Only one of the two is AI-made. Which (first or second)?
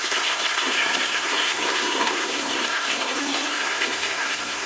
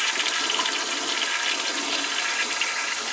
first